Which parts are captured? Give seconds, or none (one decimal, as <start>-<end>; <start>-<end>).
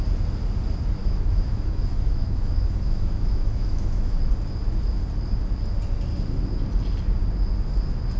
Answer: 0.0-1.0; 4.2-8.2